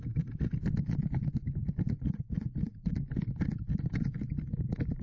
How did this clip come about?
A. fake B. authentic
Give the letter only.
B